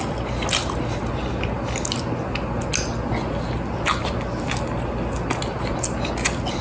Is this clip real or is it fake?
real